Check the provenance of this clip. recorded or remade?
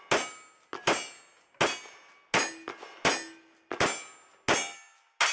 recorded